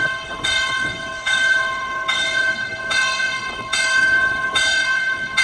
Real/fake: fake